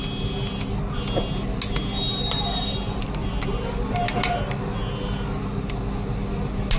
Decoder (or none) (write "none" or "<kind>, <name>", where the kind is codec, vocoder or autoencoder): none